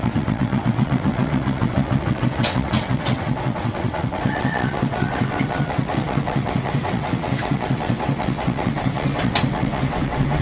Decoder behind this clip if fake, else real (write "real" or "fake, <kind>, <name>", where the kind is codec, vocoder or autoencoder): fake, vocoder, WaveNeXt